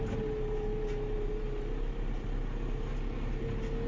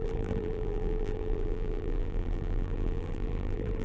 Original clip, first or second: first